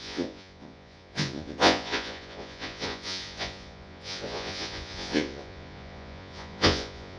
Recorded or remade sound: remade